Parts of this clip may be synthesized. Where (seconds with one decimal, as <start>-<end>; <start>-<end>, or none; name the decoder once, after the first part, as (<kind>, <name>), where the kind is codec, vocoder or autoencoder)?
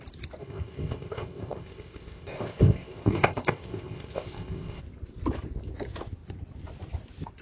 0.4-4.8 (codec, ZipCodec)